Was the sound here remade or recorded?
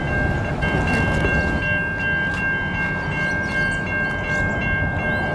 recorded